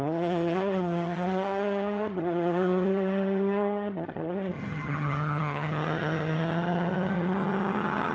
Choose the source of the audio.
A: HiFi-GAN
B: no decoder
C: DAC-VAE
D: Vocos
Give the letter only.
A